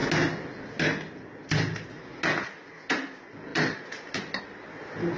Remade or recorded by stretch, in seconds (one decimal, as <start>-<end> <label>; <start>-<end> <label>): 0.0-5.2 recorded